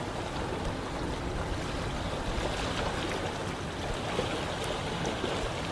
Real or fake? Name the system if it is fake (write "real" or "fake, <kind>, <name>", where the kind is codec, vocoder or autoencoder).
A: real